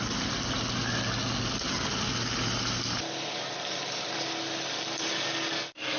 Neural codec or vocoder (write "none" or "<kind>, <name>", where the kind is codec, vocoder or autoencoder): none